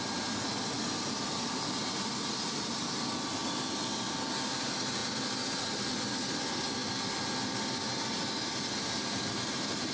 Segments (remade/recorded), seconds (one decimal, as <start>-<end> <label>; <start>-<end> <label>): 0.0-9.9 recorded